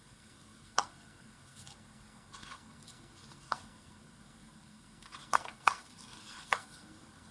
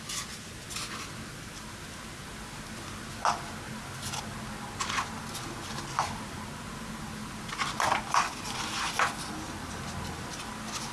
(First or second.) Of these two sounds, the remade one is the first